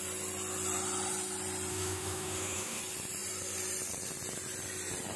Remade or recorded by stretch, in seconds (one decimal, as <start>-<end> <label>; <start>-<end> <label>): 0.0-1.7 recorded; 1.7-2.8 remade; 2.8-5.2 recorded